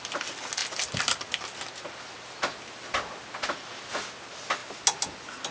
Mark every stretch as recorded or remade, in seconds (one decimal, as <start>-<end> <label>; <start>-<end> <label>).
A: 0.0-5.5 recorded